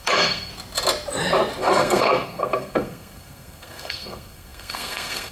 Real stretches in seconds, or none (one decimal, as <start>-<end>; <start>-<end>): 0.5-1.6